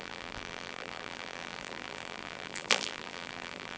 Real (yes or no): no